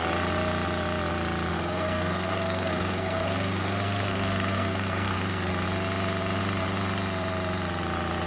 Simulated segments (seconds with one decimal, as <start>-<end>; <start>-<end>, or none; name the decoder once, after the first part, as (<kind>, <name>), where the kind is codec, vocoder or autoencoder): 1.5-5.5 (codec, SNAC)